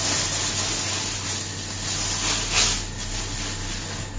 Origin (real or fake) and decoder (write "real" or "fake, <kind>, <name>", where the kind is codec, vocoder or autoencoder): real